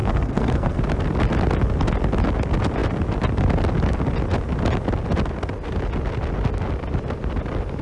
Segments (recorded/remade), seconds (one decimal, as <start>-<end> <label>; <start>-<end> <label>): 0.0-0.8 remade; 0.8-7.8 recorded